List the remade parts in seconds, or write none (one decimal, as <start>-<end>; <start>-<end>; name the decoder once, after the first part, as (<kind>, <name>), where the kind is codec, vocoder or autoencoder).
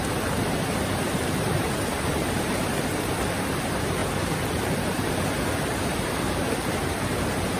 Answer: 0.0-4.0 (vocoder, BigVGAN v2); 4.5-7.6